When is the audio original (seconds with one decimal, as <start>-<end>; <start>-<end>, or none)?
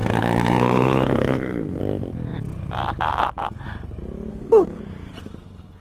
1.8-4.3; 4.8-5.8